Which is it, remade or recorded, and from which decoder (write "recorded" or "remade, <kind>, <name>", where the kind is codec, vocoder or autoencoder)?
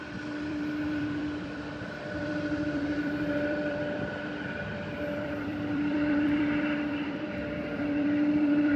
remade, vocoder, BigVGAN v2